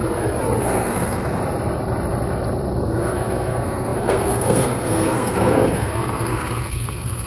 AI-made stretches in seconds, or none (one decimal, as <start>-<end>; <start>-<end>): 0.6-1.4; 2.8-7.3

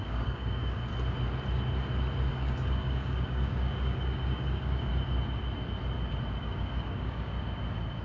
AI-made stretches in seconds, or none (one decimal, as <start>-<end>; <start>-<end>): 0.0-0.9; 2.3-4.9; 6.4-7.3

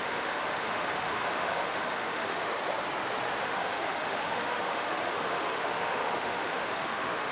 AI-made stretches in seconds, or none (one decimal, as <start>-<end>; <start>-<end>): 0.0-2.5; 3.4-7.3

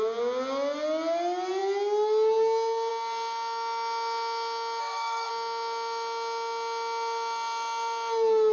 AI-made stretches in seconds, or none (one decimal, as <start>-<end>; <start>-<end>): 4.8-5.3

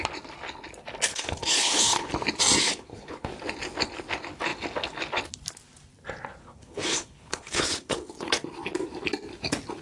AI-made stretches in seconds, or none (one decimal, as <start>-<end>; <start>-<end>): 1.1-2.1; 2.6-3.3; 6.4-8.3

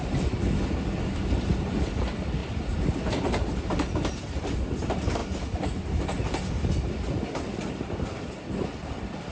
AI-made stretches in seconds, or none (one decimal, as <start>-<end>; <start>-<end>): 0.0-5.2; 7.3-9.3

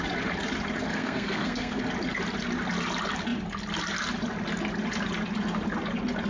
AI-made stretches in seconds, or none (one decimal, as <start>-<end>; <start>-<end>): 0.9-1.8

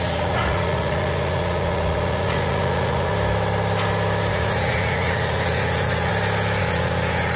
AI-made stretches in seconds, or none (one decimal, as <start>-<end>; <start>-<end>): 0.0-3.1; 4.3-6.1; 6.6-7.4